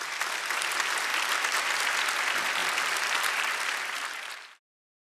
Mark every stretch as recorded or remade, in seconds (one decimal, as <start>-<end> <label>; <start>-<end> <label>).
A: 0.0-1.1 recorded; 1.1-1.6 remade; 1.6-2.6 recorded; 2.6-4.3 remade; 4.3-5.1 recorded